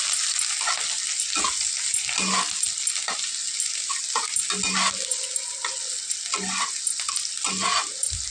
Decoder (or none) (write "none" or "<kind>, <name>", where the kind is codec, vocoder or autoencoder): none